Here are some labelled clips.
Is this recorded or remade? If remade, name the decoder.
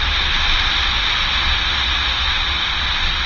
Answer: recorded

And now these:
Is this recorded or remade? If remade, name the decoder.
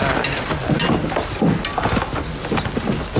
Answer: recorded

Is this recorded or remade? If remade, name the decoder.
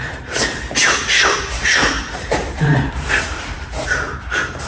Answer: remade, vocoder, BigVGAN v2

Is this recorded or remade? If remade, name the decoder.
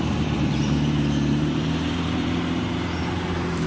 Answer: remade, vocoder, BigVGAN v2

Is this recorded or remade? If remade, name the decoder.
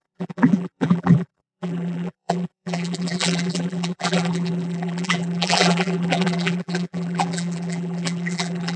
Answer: remade, vocoder, BigVGAN v2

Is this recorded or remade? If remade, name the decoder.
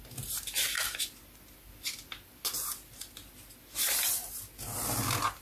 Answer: recorded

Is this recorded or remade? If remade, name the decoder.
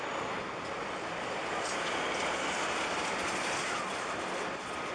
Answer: recorded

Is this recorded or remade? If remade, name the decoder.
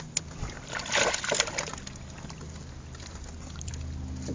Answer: recorded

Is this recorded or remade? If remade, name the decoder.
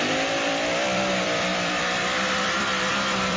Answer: remade, vocoder, BigVGAN v2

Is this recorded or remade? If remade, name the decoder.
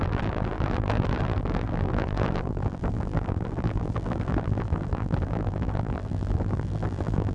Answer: remade, vocoder, BigVGAN v2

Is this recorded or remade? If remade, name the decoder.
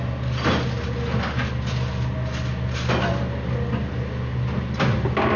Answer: recorded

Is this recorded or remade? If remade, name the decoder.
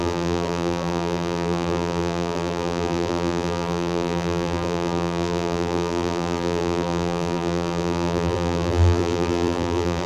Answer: remade, vocoder, BigVGAN v2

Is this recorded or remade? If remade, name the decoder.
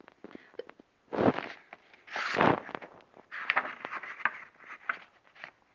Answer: recorded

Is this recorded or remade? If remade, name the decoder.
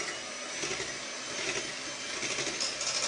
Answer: recorded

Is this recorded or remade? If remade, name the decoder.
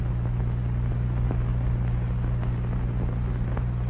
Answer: recorded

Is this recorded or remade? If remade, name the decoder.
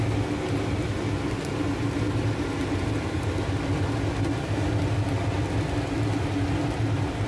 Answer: recorded